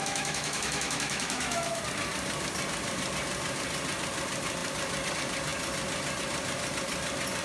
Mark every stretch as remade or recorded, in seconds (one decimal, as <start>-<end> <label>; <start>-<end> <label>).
0.0-1.8 remade; 1.8-7.4 recorded